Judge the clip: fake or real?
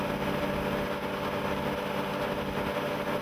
real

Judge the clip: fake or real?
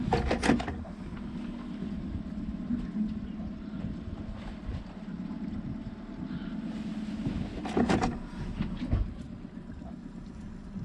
real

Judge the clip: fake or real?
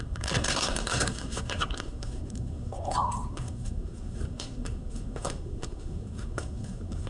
fake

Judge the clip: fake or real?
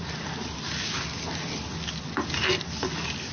real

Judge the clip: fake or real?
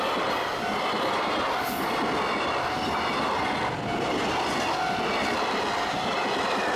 real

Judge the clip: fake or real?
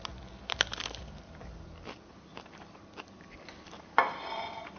fake